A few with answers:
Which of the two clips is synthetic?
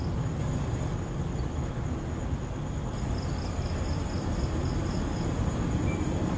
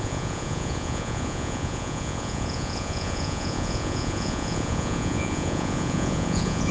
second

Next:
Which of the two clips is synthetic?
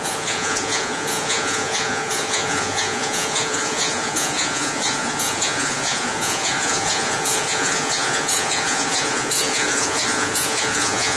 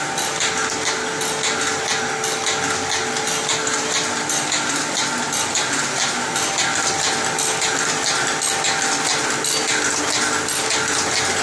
first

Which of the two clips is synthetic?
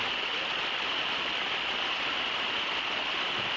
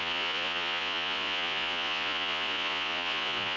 second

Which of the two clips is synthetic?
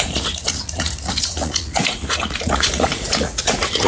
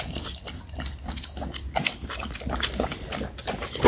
first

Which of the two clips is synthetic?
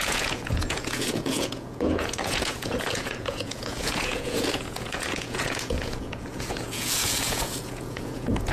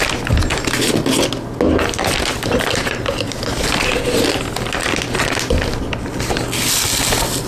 first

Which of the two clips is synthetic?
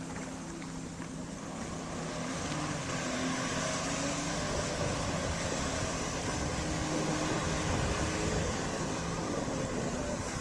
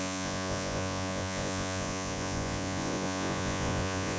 second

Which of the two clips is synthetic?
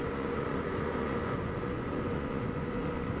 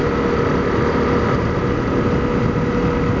first